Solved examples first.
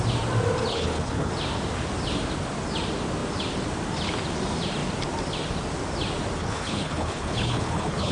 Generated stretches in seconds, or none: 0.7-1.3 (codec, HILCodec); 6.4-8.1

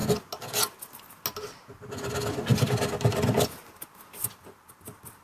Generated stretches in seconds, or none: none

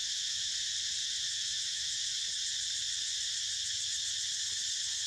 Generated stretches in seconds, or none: 0.0-0.5 (autoencoder, DAC-VAE); 1.0-2.2

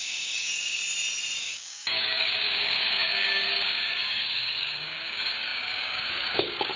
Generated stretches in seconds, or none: 0.0-0.8 (codec, DAC); 1.4-6.8

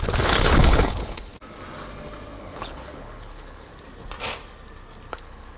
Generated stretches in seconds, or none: 0.0-1.3 (codec, HILCodec); 2.4-3.7; 5.1-5.6